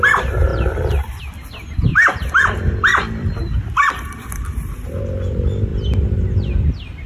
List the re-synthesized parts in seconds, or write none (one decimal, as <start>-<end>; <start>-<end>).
0.5-1.2; 1.9-5.0